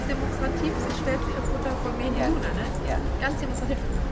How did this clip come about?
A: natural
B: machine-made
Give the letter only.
A